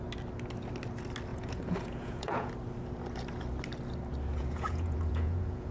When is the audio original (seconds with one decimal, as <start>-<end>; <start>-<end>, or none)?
0.0-1.3; 2.5-4.3